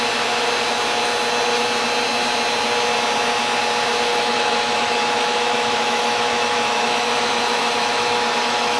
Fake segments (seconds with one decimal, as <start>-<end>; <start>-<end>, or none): 4.1-8.8